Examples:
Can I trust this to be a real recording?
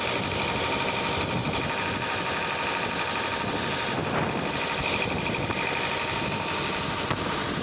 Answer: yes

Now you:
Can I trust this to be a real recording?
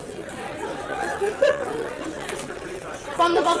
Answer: no